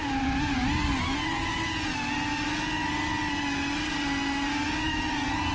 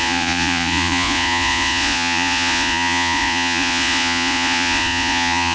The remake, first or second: second